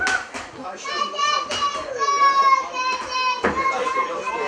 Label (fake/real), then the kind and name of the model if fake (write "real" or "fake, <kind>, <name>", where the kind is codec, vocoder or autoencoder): real